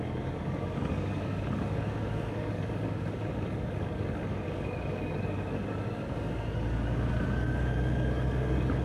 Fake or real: fake